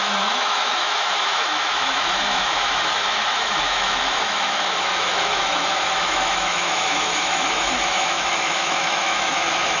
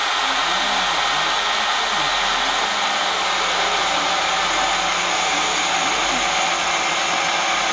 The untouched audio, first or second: second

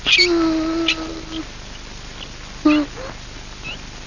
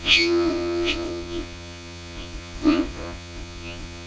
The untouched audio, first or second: first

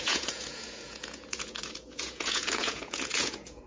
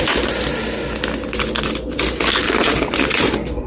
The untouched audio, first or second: second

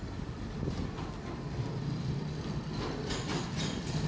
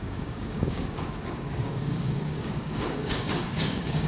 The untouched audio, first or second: first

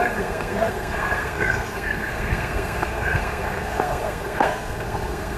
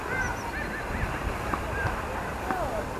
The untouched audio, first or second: second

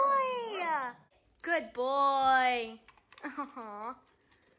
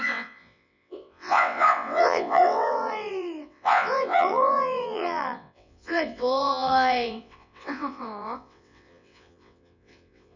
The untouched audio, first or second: first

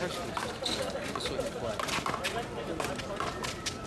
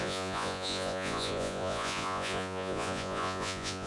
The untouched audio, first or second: first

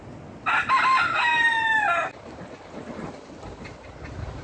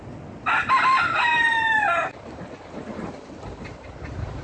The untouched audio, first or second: first